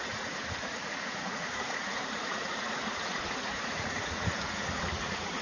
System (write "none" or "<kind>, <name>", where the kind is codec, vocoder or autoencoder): vocoder, Vocos